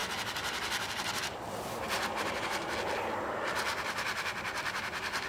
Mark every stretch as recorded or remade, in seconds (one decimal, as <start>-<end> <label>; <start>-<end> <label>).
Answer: 0.0-5.3 recorded